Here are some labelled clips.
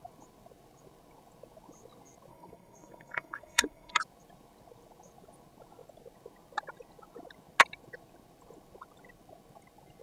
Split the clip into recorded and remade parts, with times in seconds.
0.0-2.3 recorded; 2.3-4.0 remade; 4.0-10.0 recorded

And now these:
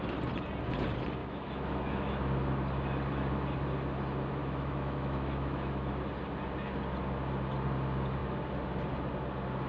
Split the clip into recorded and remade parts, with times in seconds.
0.0-1.2 recorded; 1.2-2.1 remade; 2.1-4.4 recorded; 4.4-5.9 remade; 5.9-9.7 recorded

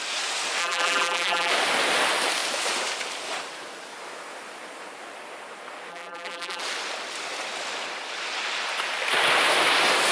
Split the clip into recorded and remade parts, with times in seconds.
0.0-0.6 recorded; 0.6-1.5 remade; 1.5-5.9 recorded; 5.9-6.6 remade; 6.6-10.1 recorded

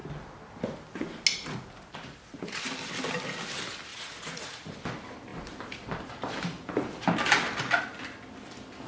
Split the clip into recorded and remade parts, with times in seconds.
0.0-3.9 recorded; 3.9-4.7 remade; 4.7-8.9 recorded

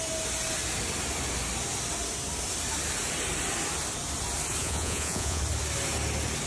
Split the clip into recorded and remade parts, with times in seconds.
0.0-4.6 recorded; 4.6-5.4 remade; 5.4-6.5 recorded

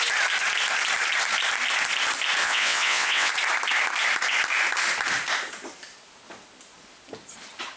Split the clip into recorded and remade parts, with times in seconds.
0.0-2.4 recorded; 2.4-3.3 remade; 3.3-7.8 recorded

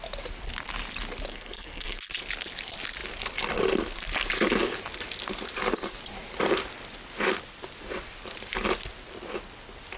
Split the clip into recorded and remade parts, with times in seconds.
0.0-1.3 recorded; 1.3-2.0 remade; 2.0-10.0 recorded

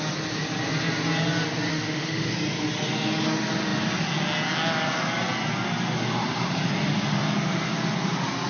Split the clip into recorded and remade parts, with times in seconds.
0.0-1.7 recorded; 1.7-2.3 remade; 2.3-8.5 recorded